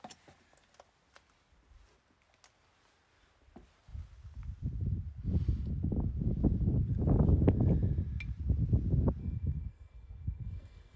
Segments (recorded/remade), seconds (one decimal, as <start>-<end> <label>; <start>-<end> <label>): 0.0-9.2 recorded; 9.2-11.0 remade